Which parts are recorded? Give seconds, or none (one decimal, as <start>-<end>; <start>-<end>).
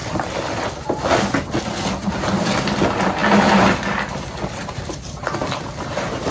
0.0-6.3